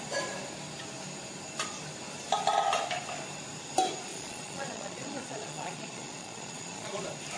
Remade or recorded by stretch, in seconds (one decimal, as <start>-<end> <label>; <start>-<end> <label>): 0.0-4.1 recorded; 4.1-7.0 remade; 7.0-7.4 recorded